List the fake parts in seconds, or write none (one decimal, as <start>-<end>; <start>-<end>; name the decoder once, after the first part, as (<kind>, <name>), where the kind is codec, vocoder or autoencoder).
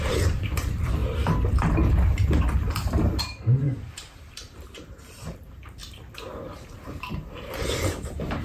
0.0-1.0 (vocoder, BigVGAN v2); 3.2-5.8; 6.7-8.4